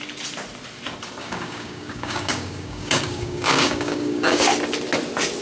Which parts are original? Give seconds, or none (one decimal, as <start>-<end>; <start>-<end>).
0.0-1.2; 4.4-5.4